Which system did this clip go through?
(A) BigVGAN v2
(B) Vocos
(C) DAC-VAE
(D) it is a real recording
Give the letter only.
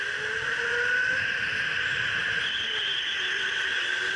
D